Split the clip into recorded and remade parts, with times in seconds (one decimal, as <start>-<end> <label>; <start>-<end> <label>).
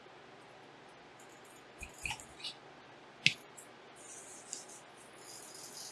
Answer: 0.0-5.9 recorded